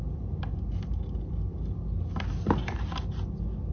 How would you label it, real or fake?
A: real